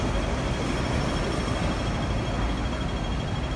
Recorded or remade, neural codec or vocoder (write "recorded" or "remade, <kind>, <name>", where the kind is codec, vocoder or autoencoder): recorded